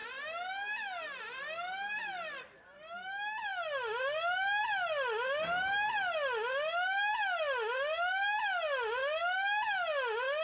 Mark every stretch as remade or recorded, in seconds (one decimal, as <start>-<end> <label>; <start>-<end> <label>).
0.0-10.4 recorded